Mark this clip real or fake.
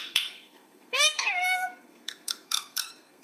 fake